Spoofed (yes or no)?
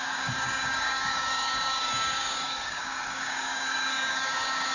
yes